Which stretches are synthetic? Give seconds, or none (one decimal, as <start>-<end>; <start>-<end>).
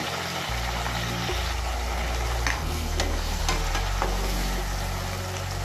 2.5-3.4